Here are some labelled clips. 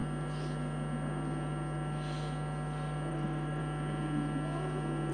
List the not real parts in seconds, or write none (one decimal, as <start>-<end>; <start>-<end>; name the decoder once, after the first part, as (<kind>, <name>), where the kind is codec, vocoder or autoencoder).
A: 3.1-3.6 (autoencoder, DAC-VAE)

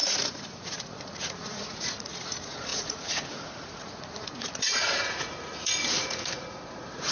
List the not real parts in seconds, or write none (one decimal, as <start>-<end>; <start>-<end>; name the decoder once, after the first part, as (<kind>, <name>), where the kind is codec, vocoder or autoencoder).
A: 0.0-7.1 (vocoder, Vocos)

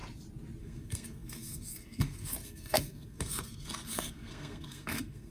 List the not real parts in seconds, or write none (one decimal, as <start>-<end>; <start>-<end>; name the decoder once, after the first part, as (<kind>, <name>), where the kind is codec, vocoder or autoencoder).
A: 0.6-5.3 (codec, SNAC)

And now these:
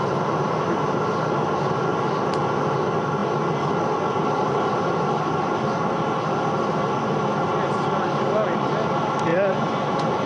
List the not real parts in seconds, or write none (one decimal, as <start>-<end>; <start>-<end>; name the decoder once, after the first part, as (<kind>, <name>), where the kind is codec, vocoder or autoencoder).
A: 9.3-10.3 (vocoder, Vocos)

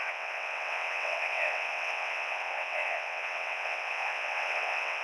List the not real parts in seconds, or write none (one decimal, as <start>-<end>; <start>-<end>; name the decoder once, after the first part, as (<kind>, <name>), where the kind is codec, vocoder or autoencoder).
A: 0.0-5.0 (vocoder, WaveNeXt)

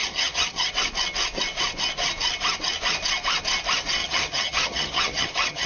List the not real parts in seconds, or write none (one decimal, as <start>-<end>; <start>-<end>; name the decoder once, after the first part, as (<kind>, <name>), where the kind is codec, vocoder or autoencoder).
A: 0.0-0.7 (vocoder, HiFi-GAN); 4.0-5.7